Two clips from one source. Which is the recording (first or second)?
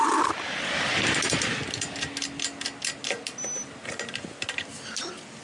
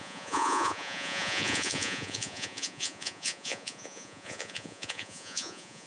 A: first